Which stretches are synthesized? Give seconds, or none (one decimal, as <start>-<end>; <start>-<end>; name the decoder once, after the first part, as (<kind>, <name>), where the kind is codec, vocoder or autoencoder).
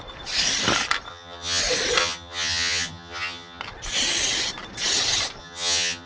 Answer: 1.1-1.6 (vocoder, HiFi-GAN); 2.0-3.6; 5.4-6.1